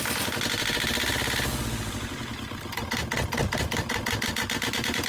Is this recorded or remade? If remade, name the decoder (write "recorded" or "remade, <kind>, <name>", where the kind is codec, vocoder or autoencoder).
recorded